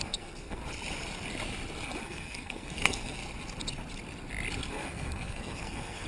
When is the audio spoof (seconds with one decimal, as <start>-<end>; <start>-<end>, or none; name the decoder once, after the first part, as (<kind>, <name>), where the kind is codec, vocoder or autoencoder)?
0.0-0.6 (codec, SNAC); 2.0-3.2; 4.7-6.1